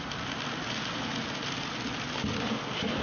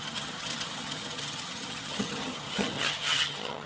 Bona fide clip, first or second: first